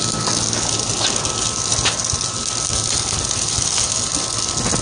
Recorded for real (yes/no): yes